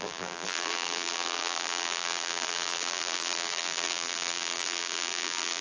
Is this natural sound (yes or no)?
no